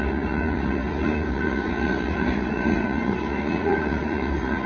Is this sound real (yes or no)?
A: no